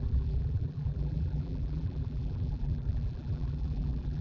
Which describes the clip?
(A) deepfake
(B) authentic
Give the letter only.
A